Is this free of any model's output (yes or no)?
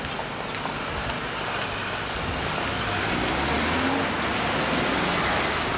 yes